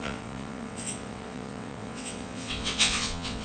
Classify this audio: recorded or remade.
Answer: remade